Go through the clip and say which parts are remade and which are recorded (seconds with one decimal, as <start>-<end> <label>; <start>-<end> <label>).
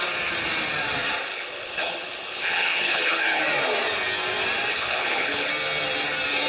0.0-1.3 recorded; 1.3-3.4 remade; 3.4-4.7 recorded; 4.7-5.5 remade; 5.5-6.5 recorded